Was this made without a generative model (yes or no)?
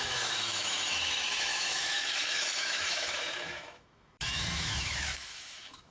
no